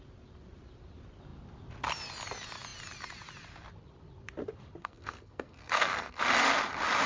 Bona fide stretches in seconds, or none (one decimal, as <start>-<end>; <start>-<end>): 0.0-4.8; 6.2-7.1